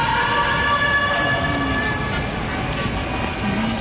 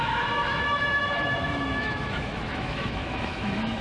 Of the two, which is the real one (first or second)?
first